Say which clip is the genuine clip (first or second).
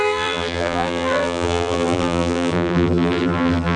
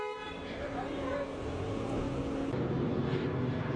second